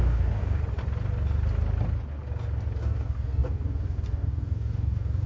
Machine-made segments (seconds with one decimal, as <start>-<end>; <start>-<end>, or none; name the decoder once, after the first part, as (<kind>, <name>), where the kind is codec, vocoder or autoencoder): 0.0-0.6 (codec, DAC); 2.8-5.3